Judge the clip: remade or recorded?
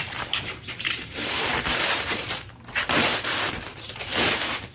remade